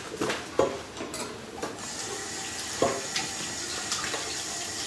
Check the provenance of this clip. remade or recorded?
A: recorded